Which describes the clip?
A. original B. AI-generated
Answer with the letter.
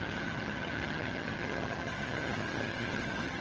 B